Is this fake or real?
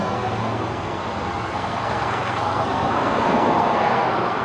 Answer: fake